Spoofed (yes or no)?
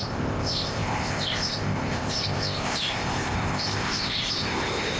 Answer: yes